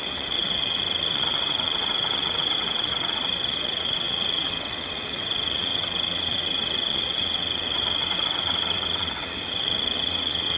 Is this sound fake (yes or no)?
yes